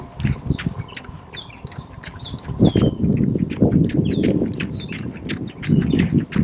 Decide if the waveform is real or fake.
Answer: fake